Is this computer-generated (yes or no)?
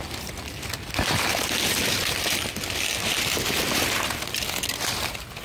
no